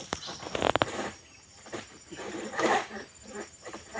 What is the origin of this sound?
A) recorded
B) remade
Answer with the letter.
B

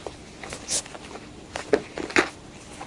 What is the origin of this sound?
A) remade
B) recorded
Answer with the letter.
B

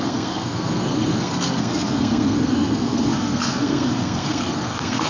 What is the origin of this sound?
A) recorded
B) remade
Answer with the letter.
B